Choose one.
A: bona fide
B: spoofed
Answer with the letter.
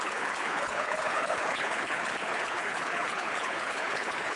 B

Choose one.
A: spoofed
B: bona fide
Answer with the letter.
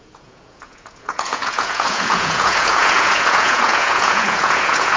A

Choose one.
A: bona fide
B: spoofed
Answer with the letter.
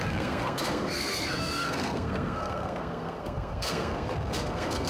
B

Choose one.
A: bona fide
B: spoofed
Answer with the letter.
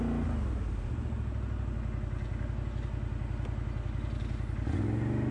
A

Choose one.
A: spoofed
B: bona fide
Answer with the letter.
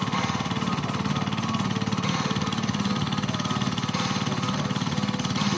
B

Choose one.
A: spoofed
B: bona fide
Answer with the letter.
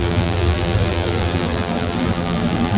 A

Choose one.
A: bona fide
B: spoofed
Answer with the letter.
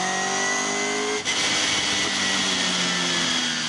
A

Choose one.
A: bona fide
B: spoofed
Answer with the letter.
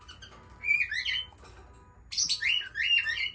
A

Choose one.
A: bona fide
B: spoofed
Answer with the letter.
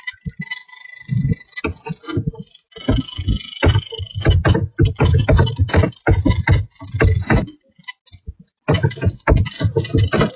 A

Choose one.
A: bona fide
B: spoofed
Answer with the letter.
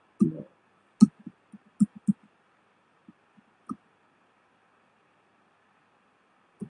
A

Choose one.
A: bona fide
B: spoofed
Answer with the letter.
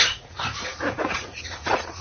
B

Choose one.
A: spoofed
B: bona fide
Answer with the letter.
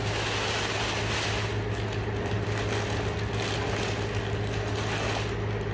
B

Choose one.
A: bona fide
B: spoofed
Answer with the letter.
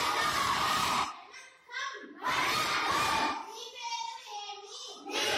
B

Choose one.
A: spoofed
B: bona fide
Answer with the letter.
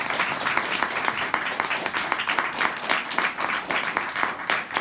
B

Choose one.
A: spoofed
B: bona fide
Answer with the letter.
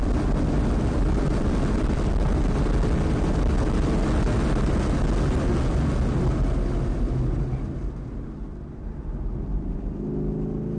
B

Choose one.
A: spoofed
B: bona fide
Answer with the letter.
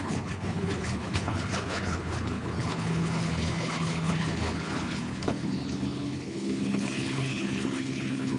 A